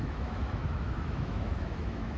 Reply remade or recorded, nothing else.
remade